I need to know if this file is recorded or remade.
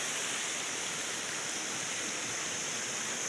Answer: recorded